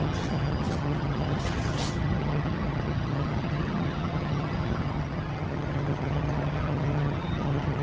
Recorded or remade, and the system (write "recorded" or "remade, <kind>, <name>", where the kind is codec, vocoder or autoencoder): remade, vocoder, HiFi-GAN